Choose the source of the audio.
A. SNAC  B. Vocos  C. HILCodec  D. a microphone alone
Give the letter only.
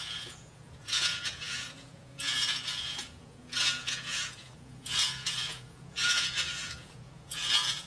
B